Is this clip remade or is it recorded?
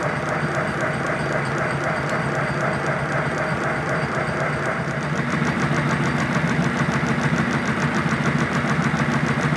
recorded